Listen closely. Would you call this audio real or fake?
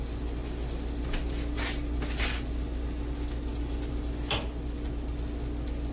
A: real